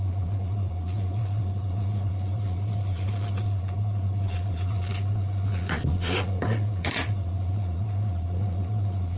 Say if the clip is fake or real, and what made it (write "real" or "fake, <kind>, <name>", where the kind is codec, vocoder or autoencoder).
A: fake, vocoder, Vocos